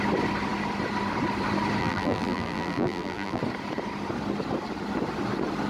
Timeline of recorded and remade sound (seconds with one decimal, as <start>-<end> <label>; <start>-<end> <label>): 0.0-1.8 recorded; 1.8-3.4 remade; 3.4-5.7 recorded